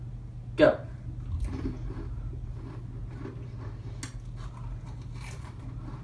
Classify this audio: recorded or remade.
recorded